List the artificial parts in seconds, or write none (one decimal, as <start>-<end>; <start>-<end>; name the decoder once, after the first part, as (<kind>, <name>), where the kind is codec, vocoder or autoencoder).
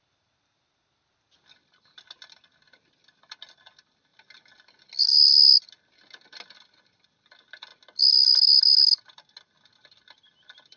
none